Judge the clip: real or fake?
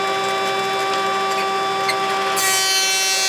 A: real